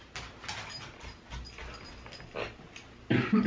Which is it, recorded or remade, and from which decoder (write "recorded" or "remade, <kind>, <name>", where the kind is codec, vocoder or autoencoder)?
recorded